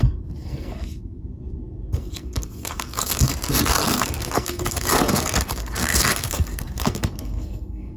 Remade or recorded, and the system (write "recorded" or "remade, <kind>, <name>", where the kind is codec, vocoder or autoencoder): remade, codec, SNAC